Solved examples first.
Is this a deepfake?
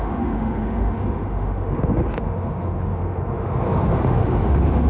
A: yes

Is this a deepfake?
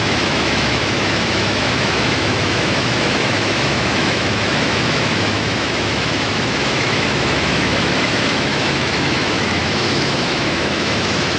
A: yes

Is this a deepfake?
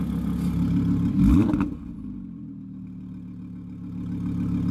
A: no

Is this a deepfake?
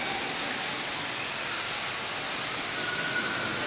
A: no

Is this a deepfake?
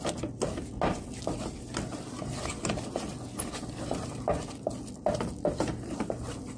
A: no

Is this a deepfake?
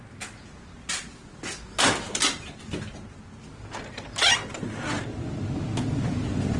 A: no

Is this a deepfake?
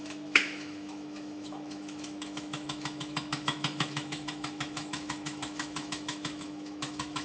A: yes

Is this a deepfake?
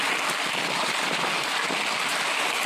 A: no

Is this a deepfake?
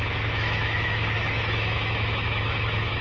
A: yes